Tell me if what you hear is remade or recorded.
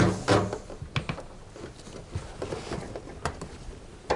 recorded